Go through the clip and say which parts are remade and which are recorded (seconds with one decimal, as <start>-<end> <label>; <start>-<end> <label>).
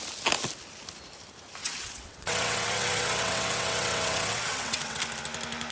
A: 0.0-1.6 recorded; 1.6-5.0 remade; 5.0-5.7 recorded